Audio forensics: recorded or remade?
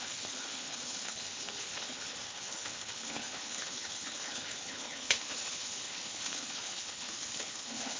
remade